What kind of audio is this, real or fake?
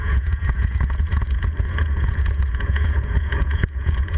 fake